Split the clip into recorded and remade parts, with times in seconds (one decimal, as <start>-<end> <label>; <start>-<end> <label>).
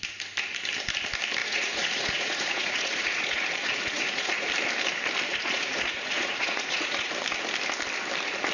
0.0-1.4 recorded; 1.4-4.5 remade; 4.5-5.3 recorded; 5.3-7.1 remade; 7.1-8.5 recorded